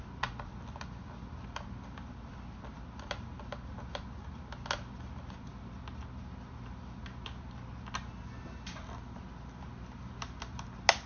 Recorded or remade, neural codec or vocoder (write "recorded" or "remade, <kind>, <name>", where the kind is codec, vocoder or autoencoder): recorded